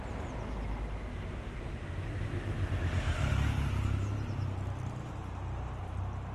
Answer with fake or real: real